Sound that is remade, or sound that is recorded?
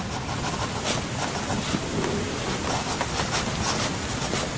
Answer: recorded